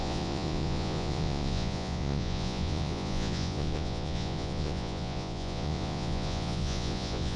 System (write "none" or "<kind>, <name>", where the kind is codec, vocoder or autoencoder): vocoder, Vocos